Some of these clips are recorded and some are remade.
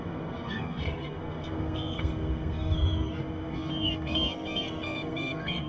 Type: remade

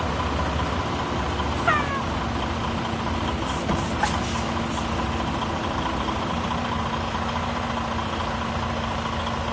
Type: recorded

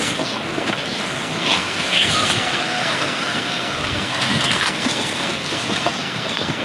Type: remade